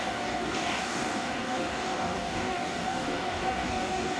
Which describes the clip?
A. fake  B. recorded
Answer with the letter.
A